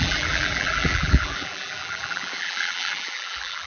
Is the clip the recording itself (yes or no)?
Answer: no